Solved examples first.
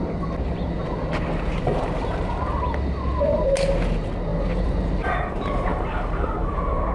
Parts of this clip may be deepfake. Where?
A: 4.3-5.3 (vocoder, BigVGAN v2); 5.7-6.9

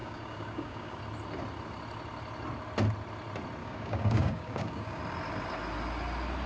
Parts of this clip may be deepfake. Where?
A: 0.0-1.0 (codec, DAC); 3.6-5.0

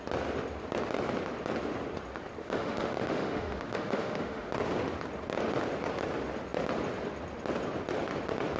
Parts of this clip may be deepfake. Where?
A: 2.4-4.5 (autoencoder, DAC-VAE)

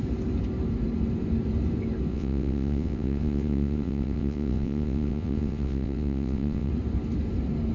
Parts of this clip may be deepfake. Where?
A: 2.1-6.7 (vocoder, WaveNeXt)

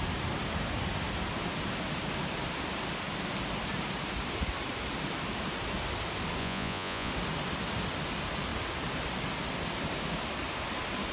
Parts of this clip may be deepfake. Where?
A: 6.4-7.1 (vocoder, Vocos)

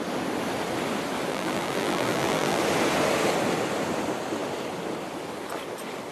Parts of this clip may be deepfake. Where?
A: 1.3-2.6 (vocoder, BigVGAN v2)

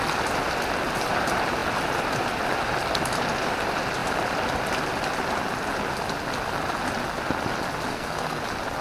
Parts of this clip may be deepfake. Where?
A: 7.9-8.4 (codec, SNAC)

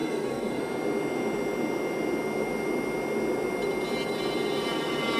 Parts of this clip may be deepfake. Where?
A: 0.0-0.6 (codec, SNAC)